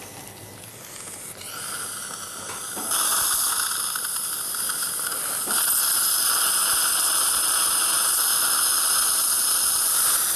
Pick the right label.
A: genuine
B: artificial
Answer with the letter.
A